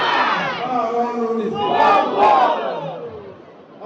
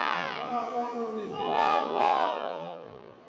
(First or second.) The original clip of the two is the first